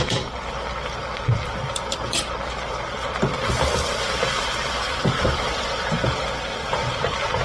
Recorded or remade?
remade